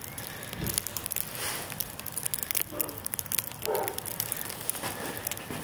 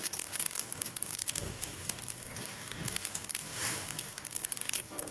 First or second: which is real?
first